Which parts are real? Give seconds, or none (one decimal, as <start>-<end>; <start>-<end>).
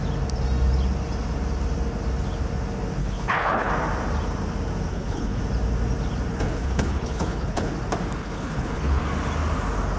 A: 0.0-3.0; 3.7-4.9; 5.4-6.3; 7.7-8.2; 9.0-10.0